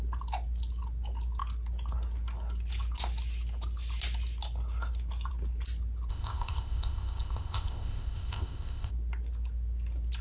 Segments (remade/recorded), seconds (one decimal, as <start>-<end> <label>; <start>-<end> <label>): 0.0-6.1 recorded; 6.1-8.9 remade; 8.9-10.2 recorded